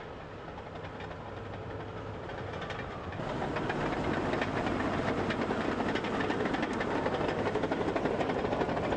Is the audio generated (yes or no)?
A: no